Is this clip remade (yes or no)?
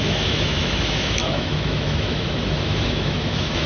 yes